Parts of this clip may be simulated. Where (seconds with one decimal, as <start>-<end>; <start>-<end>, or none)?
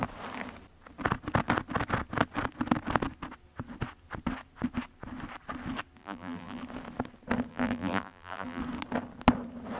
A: 6.0-6.6; 7.5-8.6